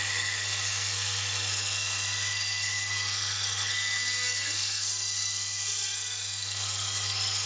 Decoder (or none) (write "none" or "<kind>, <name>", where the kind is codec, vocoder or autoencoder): codec, SNAC